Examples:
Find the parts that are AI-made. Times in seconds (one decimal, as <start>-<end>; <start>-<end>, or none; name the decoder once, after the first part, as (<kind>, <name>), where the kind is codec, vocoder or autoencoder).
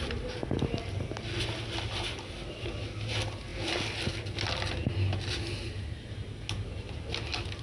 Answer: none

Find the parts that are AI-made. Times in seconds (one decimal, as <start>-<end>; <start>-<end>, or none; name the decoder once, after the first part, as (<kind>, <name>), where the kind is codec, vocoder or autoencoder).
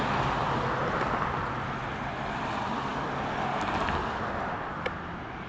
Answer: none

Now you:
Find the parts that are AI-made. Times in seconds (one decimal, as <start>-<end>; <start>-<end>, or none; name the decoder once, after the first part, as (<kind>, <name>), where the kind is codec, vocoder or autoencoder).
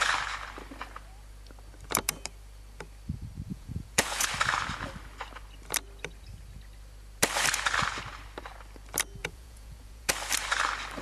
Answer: 3.5-4.3 (vocoder, Vocos); 9.2-10.1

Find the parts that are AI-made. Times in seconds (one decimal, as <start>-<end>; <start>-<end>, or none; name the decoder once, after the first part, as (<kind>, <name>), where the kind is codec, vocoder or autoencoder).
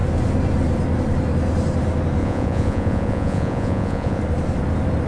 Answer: 2.2-4.2 (vocoder, Vocos)